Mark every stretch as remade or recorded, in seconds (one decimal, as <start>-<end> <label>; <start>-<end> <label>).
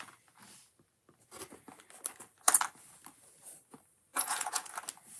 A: 0.0-4.1 recorded; 4.1-4.7 remade; 4.7-5.2 recorded